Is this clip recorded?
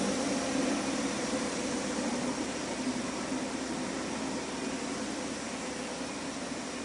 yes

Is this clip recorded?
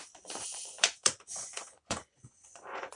no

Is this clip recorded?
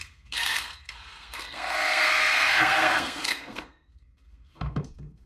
no